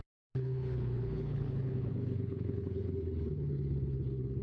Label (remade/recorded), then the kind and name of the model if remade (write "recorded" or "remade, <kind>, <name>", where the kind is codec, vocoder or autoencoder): remade, codec, HILCodec